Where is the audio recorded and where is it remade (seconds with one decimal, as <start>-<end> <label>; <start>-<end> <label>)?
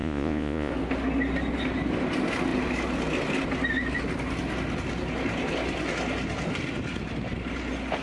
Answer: 0.0-0.7 remade; 0.7-8.0 recorded